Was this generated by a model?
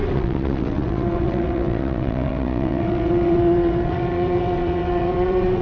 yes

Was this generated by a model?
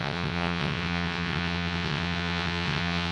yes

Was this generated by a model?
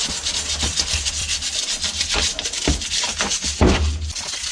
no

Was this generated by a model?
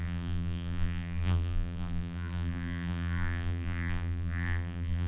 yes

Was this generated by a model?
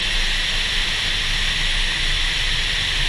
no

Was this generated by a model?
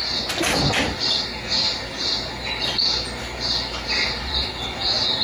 no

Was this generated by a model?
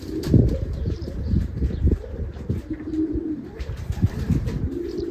yes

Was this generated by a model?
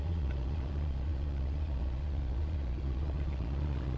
yes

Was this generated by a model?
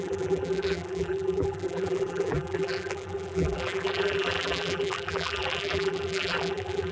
yes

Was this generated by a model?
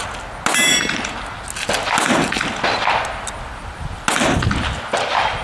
no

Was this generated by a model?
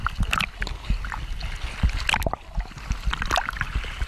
no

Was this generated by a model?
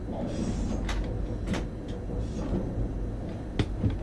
no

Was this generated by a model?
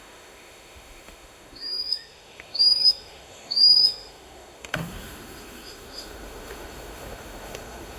yes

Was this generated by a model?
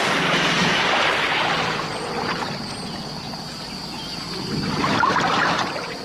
no